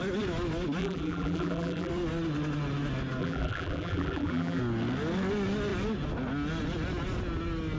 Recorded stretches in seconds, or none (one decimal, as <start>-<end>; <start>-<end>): 0.0-0.8; 1.9-3.2; 4.6-7.8